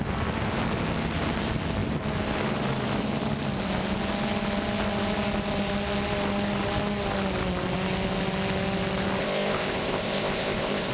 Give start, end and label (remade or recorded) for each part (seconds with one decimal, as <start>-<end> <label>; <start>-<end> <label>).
0.0-9.2 recorded; 9.2-10.9 remade